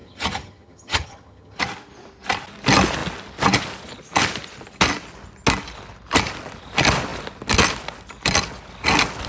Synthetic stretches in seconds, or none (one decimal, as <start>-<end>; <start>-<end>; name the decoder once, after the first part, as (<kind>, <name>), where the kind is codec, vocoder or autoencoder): 0.0-1.6 (vocoder, HiFi-GAN)